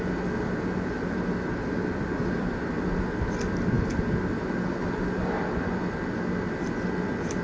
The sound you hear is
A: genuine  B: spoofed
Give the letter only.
A